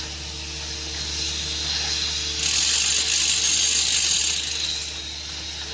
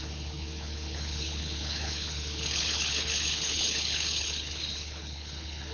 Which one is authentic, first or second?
first